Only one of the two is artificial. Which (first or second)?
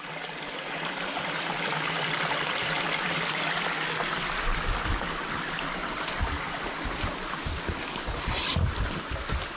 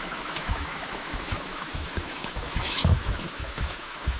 second